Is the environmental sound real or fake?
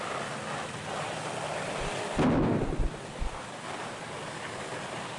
real